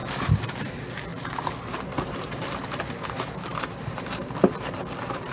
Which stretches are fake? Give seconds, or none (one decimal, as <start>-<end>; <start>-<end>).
1.1-4.3